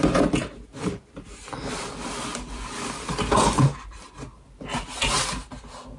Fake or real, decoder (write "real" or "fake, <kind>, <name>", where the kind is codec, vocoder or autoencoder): real